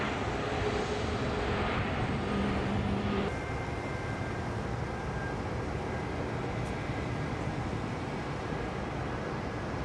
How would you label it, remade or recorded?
recorded